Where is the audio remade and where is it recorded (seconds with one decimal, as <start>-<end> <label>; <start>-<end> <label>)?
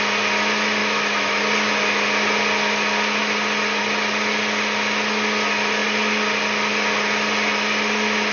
0.0-0.8 recorded; 0.8-1.4 remade; 1.4-8.3 recorded